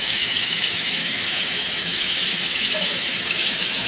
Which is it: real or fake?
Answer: fake